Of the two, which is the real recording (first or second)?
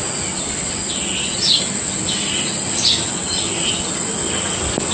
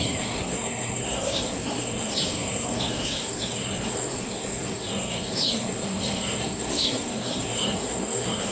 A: first